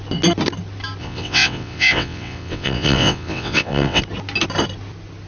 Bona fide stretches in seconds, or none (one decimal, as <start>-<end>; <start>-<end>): 0.0-1.0; 4.0-5.3